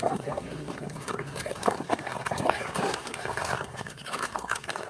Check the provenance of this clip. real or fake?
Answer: fake